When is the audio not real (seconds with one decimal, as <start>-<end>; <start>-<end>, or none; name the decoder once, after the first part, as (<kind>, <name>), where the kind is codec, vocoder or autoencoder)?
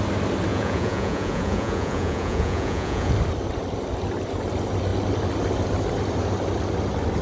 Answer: 0.5-3.1 (vocoder, Vocos)